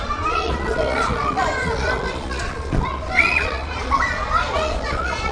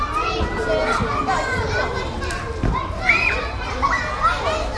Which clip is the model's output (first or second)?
first